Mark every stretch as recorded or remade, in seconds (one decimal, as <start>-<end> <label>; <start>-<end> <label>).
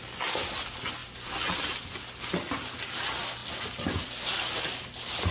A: 0.0-5.3 recorded